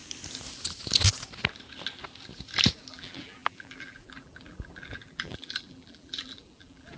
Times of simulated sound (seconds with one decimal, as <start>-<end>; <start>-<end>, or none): 2.9-7.0